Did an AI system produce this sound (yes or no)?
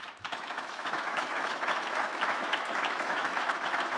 yes